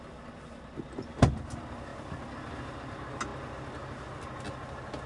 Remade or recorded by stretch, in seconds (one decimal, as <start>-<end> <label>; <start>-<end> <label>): 0.0-5.1 recorded